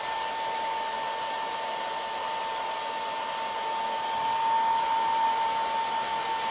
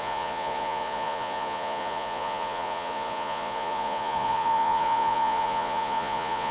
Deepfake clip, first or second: second